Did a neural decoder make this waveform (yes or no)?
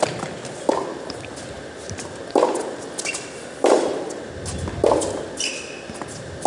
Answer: no